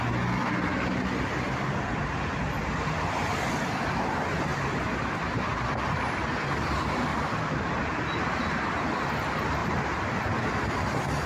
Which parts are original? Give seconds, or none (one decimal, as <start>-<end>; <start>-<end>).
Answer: 0.0-1.9; 2.7-7.1; 8.0-9.6; 10.1-11.3